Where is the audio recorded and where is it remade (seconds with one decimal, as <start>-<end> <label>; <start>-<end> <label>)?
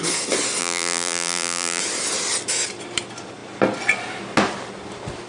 0.0-0.6 recorded; 0.6-1.8 remade; 1.8-5.3 recorded